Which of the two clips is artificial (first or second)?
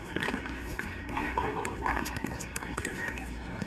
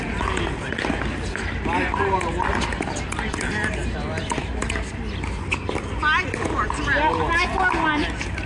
first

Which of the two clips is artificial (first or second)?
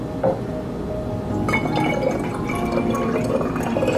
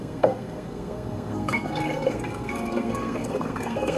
second